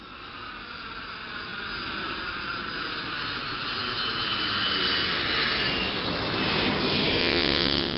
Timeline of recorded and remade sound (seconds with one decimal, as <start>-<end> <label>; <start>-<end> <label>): 0.0-7.2 recorded; 7.2-8.0 remade